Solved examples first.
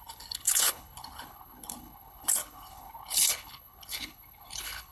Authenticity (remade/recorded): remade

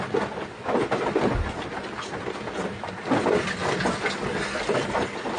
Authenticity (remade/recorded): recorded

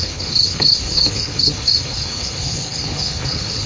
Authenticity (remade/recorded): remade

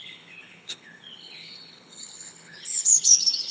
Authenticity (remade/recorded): remade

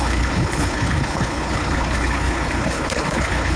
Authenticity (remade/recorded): remade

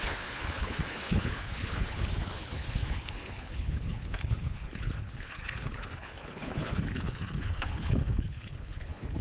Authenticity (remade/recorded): remade